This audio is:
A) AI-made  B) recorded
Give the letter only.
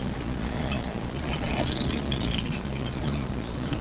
A